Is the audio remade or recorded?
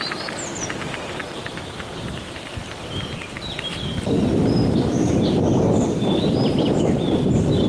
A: recorded